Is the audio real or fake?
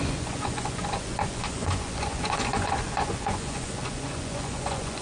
fake